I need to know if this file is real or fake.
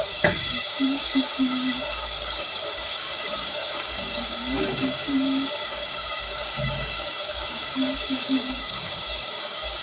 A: fake